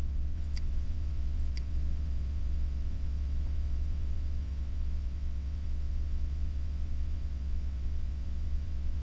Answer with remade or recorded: remade